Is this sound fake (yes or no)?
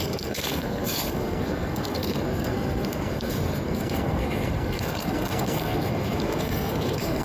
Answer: yes